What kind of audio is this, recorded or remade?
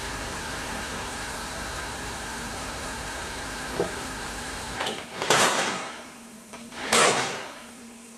remade